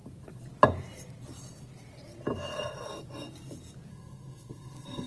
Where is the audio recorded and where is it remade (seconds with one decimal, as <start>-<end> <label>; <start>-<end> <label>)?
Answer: 0.0-3.9 recorded; 3.9-5.1 remade